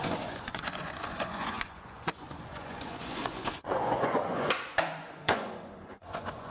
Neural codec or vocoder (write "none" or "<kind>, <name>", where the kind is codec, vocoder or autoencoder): vocoder, Vocos